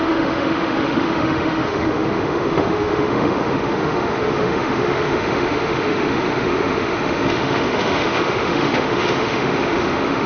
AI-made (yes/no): yes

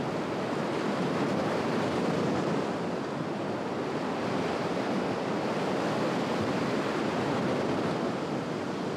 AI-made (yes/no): no